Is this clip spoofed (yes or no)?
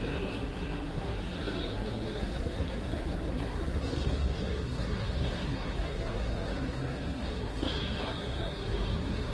yes